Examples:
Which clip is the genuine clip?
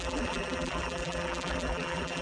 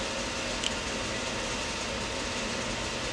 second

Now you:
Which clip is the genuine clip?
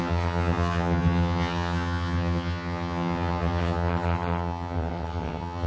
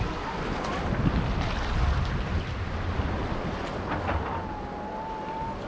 second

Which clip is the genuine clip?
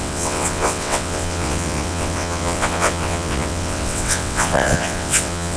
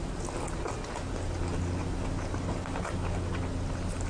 second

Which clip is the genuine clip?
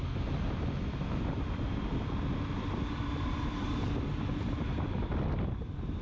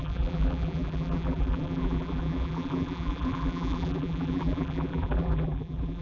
first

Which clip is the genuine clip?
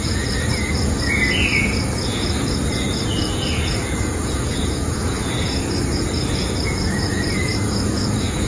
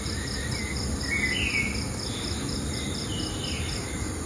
second